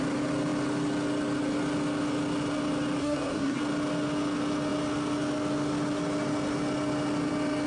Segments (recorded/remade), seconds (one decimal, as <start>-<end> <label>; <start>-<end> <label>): 0.0-3.0 recorded; 3.0-3.6 remade; 3.6-7.7 recorded